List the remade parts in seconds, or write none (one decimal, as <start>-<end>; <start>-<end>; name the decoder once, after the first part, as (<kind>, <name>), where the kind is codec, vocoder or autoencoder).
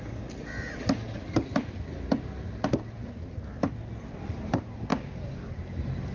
4.9-5.5 (codec, DAC)